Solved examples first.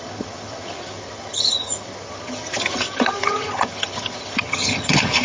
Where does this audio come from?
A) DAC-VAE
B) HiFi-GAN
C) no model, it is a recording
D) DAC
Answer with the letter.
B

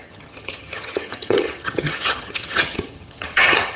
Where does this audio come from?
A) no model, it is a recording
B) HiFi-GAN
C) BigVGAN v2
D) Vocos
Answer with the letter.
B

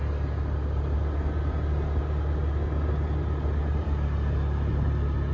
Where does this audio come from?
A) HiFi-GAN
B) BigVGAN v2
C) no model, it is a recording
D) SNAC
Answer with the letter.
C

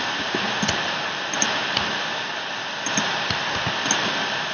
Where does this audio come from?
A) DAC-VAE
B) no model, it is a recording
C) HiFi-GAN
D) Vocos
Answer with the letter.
B